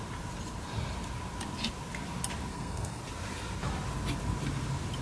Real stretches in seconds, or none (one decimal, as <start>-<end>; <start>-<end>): 0.0-2.5; 3.0-5.0